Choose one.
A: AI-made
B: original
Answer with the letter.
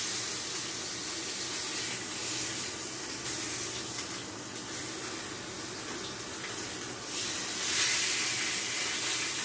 B